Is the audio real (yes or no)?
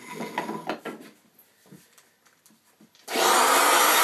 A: yes